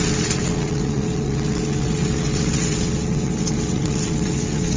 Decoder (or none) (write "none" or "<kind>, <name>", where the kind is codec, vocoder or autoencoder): vocoder, WaveNeXt